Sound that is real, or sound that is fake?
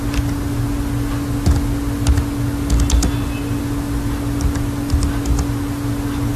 real